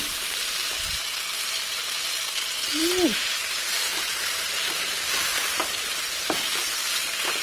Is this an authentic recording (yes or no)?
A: no